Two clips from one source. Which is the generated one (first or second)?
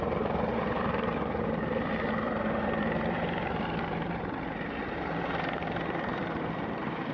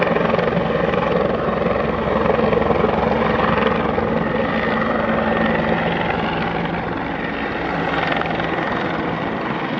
first